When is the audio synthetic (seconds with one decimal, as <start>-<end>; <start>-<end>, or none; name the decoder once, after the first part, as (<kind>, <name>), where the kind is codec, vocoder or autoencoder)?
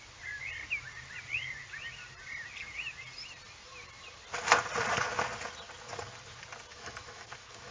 6.7-7.7 (autoencoder, DAC-VAE)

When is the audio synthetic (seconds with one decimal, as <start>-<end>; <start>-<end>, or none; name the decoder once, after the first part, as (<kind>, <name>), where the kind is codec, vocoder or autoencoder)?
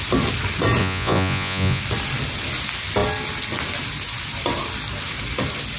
0.8-1.8 (vocoder, Vocos)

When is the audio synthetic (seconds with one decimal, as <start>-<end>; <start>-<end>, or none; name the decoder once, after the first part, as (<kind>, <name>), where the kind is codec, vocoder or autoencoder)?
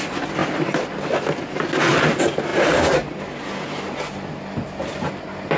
none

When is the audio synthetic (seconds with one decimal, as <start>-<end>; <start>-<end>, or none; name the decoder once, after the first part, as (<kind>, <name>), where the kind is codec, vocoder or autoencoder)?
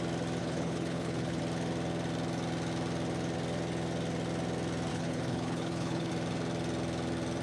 0.4-1.4 (codec, HILCodec); 4.9-6.1